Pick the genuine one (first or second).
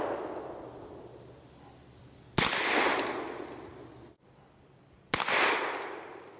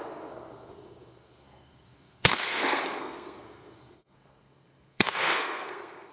first